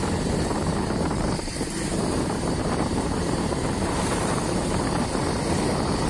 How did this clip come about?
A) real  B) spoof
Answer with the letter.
B